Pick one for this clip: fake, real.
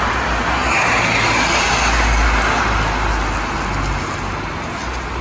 real